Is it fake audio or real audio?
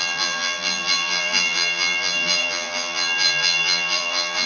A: fake